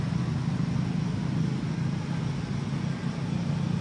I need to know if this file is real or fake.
real